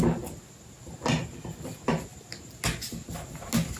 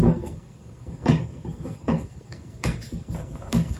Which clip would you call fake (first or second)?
second